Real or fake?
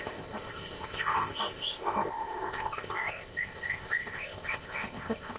fake